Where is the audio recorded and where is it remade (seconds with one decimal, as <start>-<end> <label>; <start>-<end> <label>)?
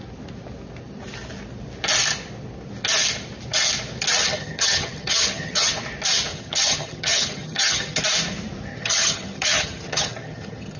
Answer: 0.0-4.2 recorded; 4.2-5.7 remade; 5.7-6.3 recorded; 6.3-8.0 remade; 8.0-8.7 recorded; 8.7-10.8 remade